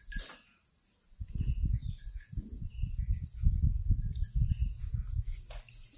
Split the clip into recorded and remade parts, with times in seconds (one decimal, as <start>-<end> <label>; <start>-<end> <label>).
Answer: 0.0-6.0 recorded